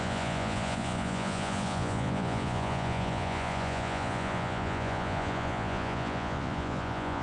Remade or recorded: remade